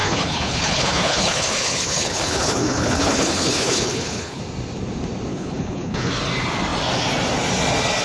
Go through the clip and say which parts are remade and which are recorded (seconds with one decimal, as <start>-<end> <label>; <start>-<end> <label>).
0.0-4.4 remade; 4.4-5.3 recorded; 5.3-6.1 remade; 6.1-8.0 recorded